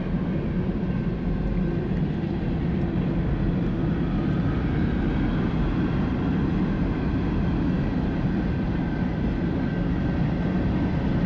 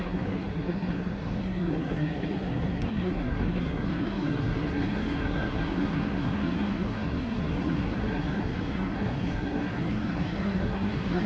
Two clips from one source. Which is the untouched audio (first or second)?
first